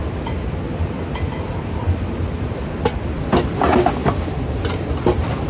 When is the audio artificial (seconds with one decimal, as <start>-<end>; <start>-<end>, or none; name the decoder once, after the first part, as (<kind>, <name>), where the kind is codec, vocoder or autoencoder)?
none